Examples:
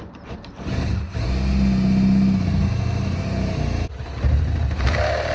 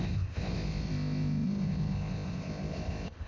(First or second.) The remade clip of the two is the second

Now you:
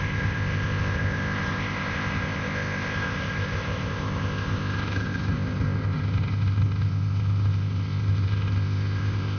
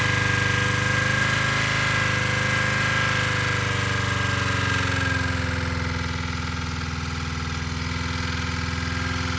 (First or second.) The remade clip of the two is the first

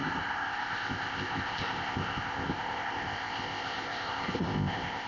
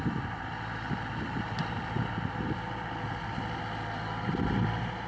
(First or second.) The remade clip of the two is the first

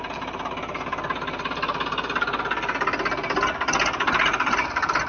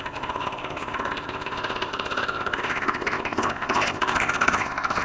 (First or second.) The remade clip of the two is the second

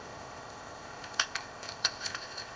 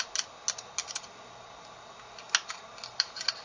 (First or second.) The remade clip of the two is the first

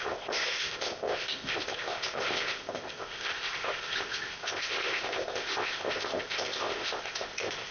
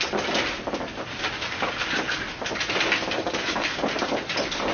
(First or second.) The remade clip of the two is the first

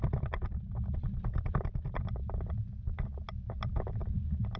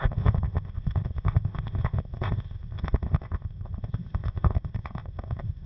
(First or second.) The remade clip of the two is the second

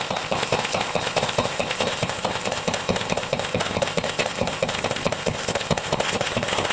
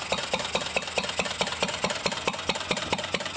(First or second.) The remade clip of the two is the first